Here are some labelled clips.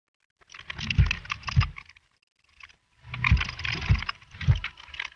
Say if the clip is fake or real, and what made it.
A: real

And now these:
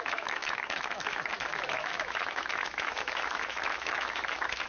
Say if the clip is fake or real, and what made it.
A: fake, autoencoder, DAC-VAE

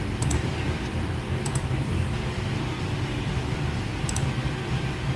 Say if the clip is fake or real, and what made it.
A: fake, vocoder, BigVGAN v2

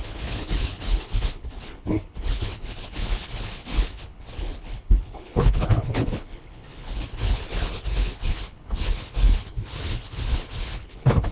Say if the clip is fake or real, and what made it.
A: fake, codec, HILCodec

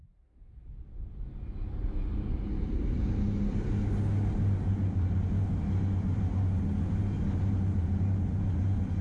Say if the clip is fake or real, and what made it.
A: real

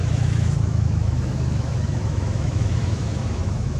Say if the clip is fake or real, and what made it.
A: fake, autoencoder, DAC-VAE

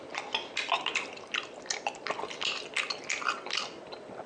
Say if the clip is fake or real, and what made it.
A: real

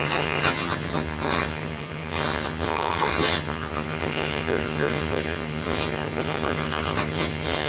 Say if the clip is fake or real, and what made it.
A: fake, vocoder, HiFi-GAN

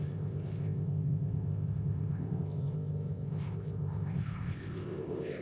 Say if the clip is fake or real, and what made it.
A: fake, codec, ZipCodec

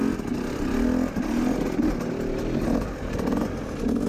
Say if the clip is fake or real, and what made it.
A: real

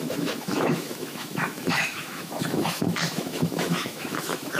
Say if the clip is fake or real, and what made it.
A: fake, autoencoder, DAC-VAE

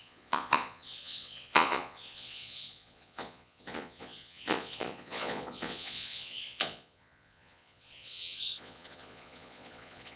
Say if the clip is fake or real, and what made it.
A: fake, vocoder, Vocos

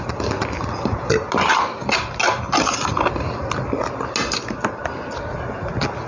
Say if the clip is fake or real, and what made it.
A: real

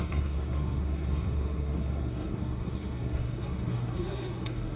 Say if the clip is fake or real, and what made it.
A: fake, codec, SNAC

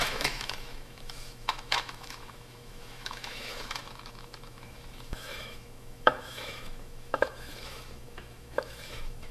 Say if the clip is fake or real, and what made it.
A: fake, autoencoder, DAC-VAE